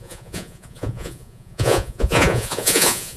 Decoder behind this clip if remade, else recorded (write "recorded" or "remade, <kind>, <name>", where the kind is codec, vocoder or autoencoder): remade, vocoder, Vocos